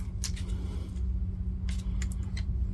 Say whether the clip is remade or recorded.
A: recorded